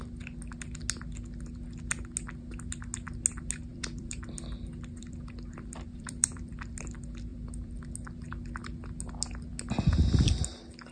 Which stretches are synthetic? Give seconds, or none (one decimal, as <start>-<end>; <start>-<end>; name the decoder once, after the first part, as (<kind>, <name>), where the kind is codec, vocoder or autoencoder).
3.7-6.7 (vocoder, BigVGAN v2); 7.3-7.8